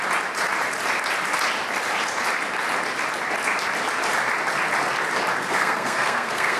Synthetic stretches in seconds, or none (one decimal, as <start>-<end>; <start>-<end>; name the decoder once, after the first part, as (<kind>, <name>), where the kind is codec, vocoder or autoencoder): 5.4-6.6 (codec, SNAC)